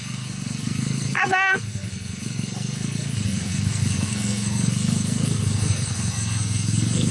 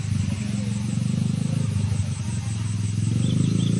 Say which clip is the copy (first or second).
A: first